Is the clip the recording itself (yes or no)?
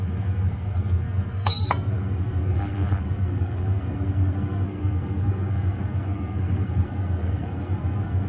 no